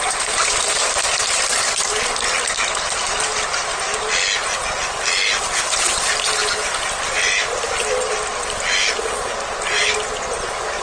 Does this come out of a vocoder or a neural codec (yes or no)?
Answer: no